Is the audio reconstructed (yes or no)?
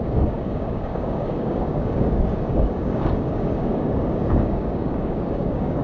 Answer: yes